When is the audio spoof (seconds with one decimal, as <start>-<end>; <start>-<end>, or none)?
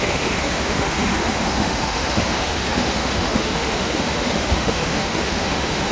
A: 0.0-5.9